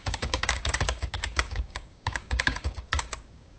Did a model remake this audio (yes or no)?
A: yes